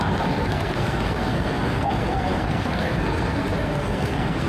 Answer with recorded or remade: remade